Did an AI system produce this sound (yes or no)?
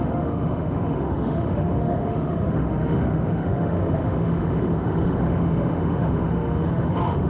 yes